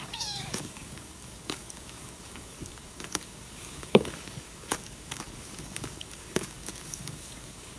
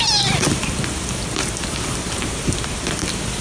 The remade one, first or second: first